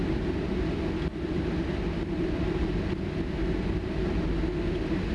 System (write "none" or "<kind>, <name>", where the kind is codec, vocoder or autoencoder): none